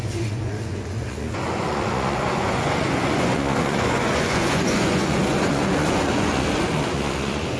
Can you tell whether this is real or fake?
fake